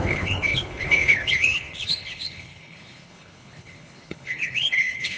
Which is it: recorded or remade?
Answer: remade